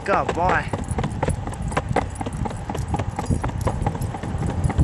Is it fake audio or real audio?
real